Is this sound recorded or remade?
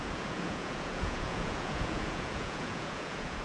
remade